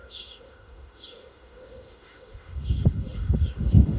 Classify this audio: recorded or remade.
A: remade